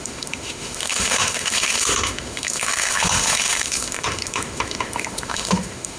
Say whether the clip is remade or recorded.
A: remade